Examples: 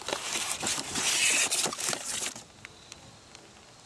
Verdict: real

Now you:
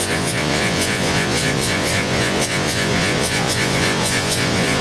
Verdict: fake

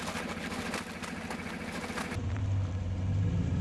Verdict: real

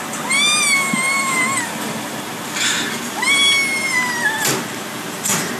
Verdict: real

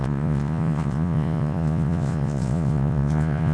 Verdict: fake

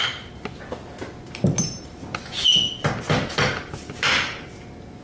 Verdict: real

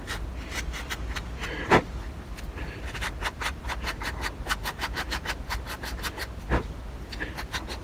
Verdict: real